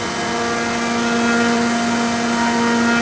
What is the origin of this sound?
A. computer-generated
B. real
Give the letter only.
B